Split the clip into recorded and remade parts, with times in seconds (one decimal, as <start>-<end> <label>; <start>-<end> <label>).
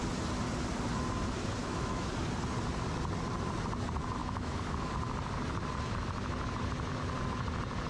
0.0-1.6 recorded; 1.6-2.1 remade; 2.1-4.2 recorded; 4.2-4.9 remade; 4.9-7.9 recorded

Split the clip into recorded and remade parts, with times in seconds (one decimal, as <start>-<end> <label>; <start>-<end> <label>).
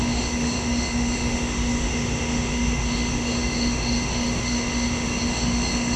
0.0-6.0 remade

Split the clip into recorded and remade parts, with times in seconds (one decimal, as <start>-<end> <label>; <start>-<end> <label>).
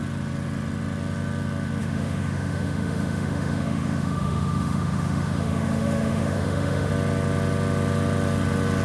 0.0-1.8 recorded; 1.8-6.9 remade; 6.9-8.8 recorded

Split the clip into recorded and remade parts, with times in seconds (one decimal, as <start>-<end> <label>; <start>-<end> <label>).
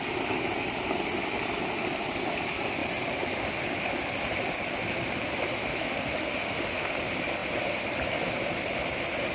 0.0-5.6 recorded; 5.6-6.9 remade; 6.9-9.3 recorded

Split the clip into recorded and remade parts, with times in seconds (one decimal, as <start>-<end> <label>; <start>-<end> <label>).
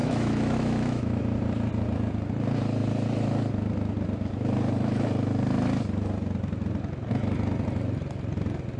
0.0-1.2 remade; 1.2-8.8 recorded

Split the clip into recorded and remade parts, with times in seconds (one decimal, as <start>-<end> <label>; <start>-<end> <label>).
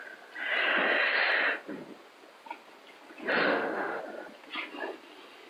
0.0-3.4 recorded; 3.4-4.0 remade; 4.0-5.5 recorded